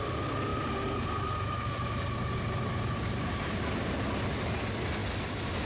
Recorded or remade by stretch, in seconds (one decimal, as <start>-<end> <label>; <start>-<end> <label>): 0.0-0.5 recorded; 0.5-3.9 remade; 3.9-5.7 recorded